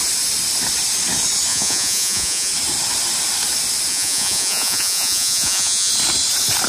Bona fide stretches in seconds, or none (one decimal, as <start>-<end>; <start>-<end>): 0.0-1.5; 2.5-3.9; 5.9-6.7